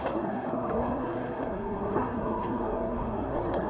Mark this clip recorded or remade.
remade